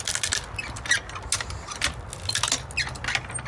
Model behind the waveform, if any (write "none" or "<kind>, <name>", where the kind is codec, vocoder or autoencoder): none